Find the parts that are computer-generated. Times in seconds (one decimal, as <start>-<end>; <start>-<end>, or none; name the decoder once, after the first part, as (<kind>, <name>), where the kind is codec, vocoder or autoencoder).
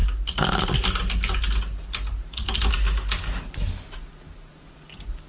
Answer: none